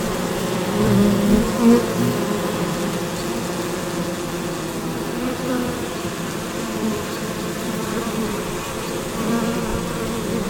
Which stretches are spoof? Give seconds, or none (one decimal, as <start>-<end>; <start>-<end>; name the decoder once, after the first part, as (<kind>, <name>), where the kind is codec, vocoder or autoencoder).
0.0-1.0 (vocoder, BigVGAN v2); 5.3-10.5